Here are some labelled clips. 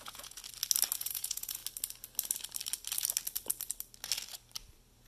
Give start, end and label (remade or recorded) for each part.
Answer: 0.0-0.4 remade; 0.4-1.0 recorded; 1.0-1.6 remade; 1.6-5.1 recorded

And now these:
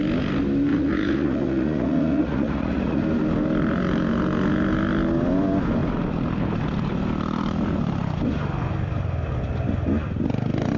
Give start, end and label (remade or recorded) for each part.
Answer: 0.0-0.7 recorded; 0.7-3.0 remade; 3.0-10.8 recorded

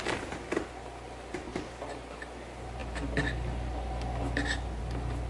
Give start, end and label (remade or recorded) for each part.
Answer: 0.0-1.5 recorded; 1.5-2.0 remade; 2.0-5.3 recorded

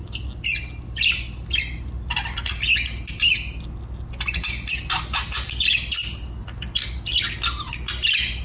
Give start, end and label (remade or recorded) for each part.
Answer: 0.0-8.4 recorded

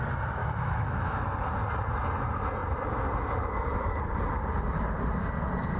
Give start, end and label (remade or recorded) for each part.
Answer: 0.0-0.4 recorded; 0.4-1.2 remade; 1.2-5.8 recorded

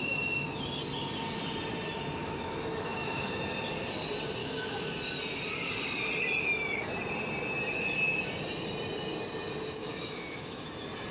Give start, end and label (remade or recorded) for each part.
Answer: 0.0-2.2 recorded; 2.2-3.4 remade; 3.4-4.4 recorded; 4.4-4.9 remade; 4.9-9.8 recorded; 9.8-10.7 remade; 10.7-11.1 recorded

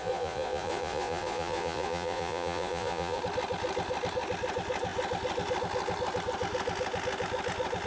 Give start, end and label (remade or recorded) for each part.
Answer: 0.0-3.2 remade; 3.2-7.9 recorded